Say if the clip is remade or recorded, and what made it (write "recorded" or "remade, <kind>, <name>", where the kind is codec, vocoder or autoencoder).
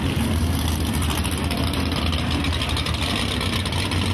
recorded